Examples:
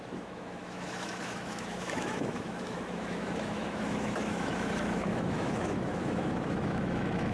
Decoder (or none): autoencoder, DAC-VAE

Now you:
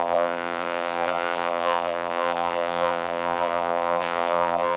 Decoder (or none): vocoder, BigVGAN v2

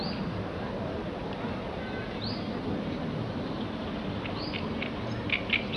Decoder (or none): none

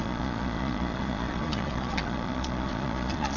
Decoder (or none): vocoder, Vocos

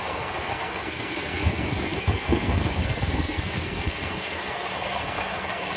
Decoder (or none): codec, SNAC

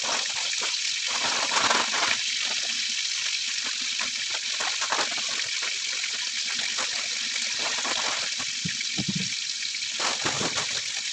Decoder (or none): none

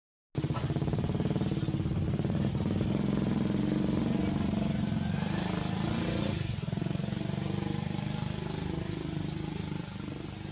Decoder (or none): none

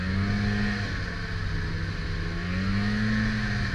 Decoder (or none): none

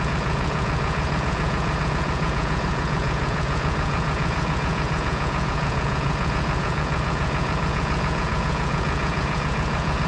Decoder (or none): vocoder, Vocos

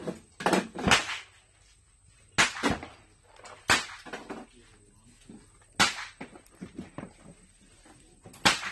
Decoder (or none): none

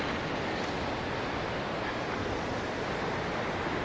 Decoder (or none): none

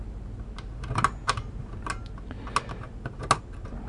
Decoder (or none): none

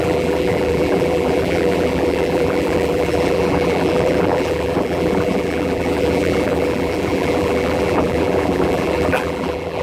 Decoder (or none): vocoder, BigVGAN v2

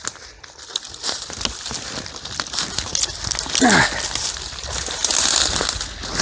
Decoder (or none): none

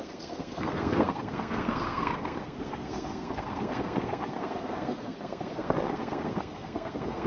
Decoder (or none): codec, SNAC